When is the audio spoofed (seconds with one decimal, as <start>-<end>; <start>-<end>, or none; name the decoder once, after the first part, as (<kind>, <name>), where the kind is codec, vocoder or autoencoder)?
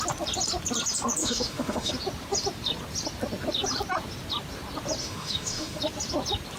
1.2-1.9 (autoencoder, DAC-VAE); 5.0-5.8